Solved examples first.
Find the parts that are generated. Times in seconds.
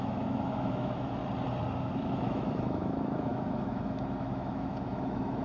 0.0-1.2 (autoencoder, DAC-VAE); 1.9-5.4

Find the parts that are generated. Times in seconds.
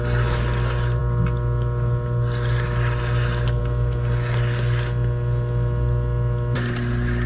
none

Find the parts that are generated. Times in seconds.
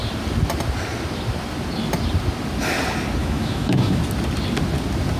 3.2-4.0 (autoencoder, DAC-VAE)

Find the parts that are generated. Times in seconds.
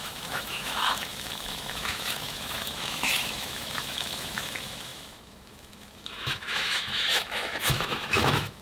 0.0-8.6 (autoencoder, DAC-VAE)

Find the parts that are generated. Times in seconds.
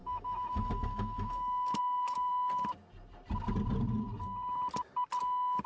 0.0-2.3 (autoencoder, DAC-VAE)